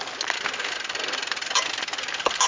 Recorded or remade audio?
recorded